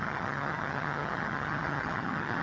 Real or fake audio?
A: fake